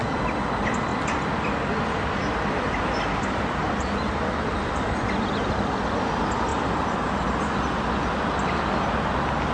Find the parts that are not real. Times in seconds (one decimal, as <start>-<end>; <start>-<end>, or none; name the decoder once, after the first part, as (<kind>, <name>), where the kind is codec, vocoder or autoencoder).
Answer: none